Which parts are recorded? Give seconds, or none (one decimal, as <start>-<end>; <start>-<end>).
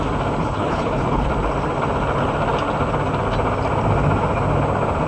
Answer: 0.0-0.4; 1.3-5.1